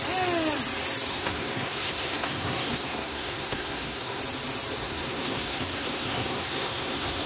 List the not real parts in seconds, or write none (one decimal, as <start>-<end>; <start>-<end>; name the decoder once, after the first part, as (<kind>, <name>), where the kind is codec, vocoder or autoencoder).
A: 1.1-4.2 (codec, SNAC); 4.8-7.3